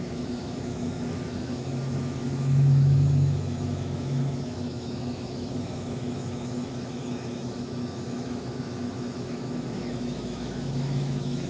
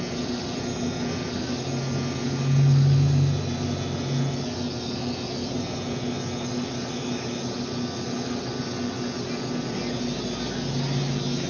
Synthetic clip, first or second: first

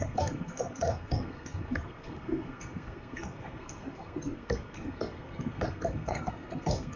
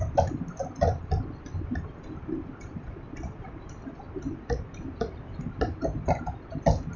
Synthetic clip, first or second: first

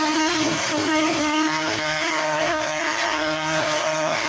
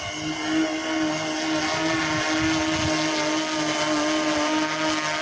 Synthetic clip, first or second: first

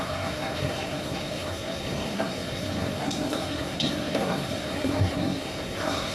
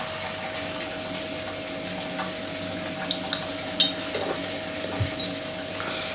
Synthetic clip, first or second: first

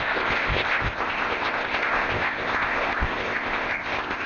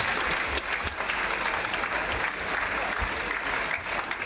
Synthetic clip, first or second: first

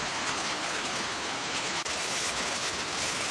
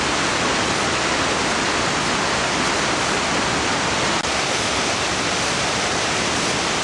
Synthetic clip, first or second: first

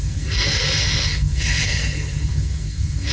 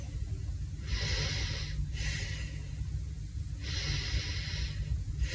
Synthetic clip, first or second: first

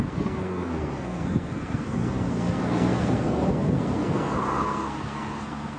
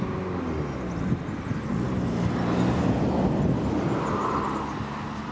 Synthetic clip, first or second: first